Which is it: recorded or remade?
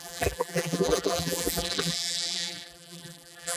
remade